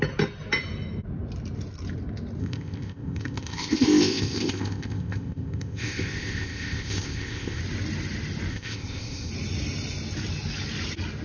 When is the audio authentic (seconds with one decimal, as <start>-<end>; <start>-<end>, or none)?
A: 0.0-2.4; 7.6-8.5; 9.3-11.2